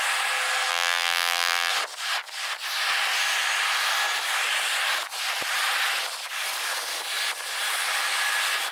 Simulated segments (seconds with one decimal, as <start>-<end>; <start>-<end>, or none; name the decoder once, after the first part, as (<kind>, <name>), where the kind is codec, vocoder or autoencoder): 0.7-1.7 (vocoder, BigVGAN v2)